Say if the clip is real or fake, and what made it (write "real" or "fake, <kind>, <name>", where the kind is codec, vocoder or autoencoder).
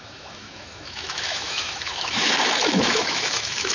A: fake, autoencoder, DAC-VAE